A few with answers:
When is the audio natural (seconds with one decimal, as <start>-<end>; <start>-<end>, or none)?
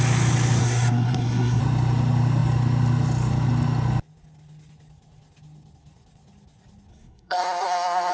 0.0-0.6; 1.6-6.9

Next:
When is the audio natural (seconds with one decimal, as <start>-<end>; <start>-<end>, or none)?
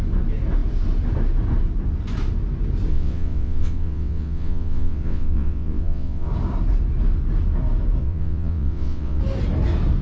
0.0-2.9; 6.3-8.0; 9.2-10.0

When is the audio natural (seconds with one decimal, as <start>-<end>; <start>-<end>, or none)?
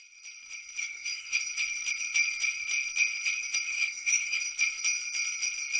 0.0-0.8; 1.4-3.7; 4.4-5.8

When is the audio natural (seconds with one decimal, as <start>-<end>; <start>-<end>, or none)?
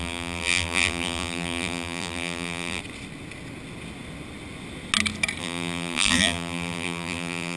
2.8-5.4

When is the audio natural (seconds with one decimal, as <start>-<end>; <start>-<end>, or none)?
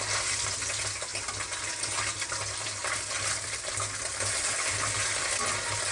0.0-5.9